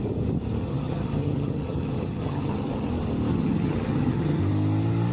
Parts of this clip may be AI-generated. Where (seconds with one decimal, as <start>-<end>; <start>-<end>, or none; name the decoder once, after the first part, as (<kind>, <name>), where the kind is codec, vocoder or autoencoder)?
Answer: 0.6-2.9 (vocoder, HiFi-GAN); 3.3-4.4